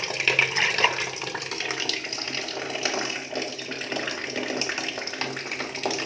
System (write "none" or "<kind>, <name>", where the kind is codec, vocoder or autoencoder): none